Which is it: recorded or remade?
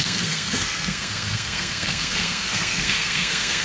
remade